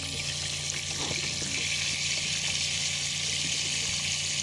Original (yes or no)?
yes